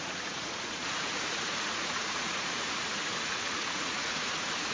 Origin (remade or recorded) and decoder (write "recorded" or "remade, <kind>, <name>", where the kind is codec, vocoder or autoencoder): remade, vocoder, Vocos